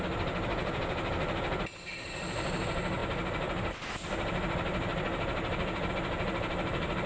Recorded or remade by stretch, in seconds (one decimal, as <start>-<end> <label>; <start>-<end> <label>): 0.0-7.1 recorded